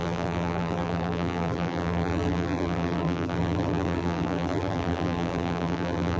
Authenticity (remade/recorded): remade